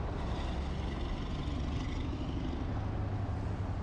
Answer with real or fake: real